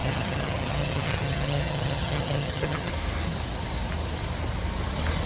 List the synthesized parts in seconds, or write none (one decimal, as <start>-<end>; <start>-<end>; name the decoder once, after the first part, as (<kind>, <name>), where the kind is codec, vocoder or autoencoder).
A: 0.0-2.9 (vocoder, HiFi-GAN)